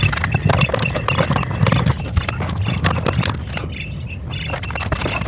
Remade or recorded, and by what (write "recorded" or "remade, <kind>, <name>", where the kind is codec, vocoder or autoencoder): recorded